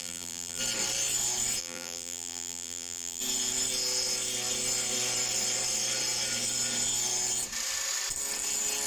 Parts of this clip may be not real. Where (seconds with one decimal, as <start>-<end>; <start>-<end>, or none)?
0.0-0.6; 1.6-3.2